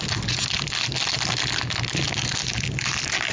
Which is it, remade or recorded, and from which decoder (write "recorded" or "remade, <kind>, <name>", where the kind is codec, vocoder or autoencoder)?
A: recorded